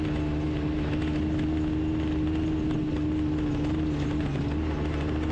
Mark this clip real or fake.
real